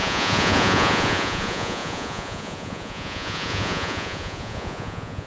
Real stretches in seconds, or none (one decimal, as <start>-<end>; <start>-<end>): none